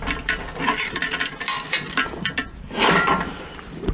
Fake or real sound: fake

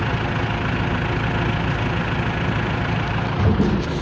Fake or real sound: real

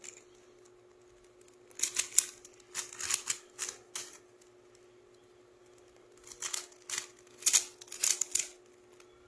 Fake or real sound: real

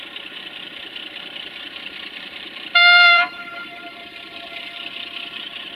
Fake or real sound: fake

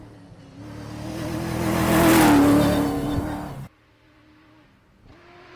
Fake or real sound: real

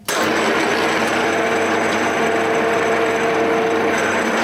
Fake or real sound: real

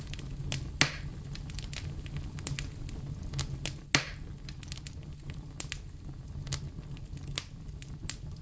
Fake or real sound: real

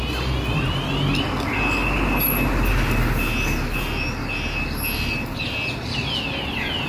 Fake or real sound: real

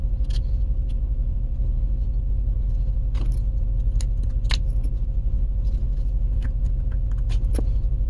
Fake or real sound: real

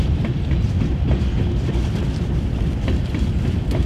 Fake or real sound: fake